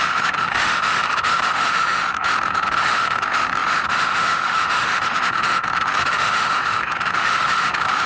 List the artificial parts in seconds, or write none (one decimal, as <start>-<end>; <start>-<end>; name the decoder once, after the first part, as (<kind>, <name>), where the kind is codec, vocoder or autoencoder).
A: 0.0-8.1 (autoencoder, DAC-VAE)